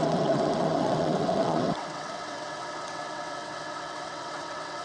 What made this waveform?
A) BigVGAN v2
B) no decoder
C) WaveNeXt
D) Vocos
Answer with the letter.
C